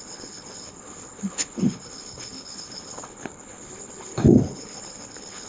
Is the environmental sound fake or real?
fake